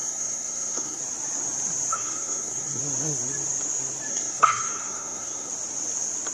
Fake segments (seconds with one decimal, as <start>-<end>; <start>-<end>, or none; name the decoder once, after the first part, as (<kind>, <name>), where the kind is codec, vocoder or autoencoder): 0.0-1.0 (codec, SNAC); 1.9-2.8; 4.1-5.5